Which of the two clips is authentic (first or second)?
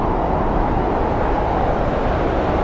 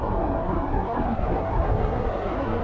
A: first